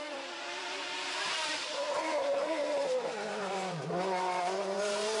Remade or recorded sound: remade